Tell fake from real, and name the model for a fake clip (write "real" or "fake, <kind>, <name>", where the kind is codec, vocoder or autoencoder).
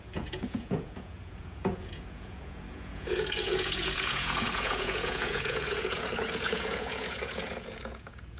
fake, vocoder, Vocos